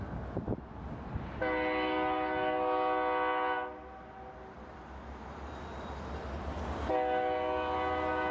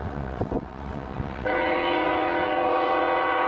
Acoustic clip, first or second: first